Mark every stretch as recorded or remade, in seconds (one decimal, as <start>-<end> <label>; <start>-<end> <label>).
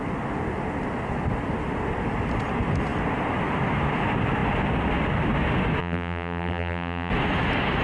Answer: 0.0-5.8 recorded; 5.8-7.1 remade; 7.1-7.8 recorded